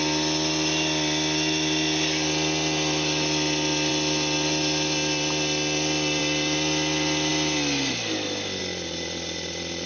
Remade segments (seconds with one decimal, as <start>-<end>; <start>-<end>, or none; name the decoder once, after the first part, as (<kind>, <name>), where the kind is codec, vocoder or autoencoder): none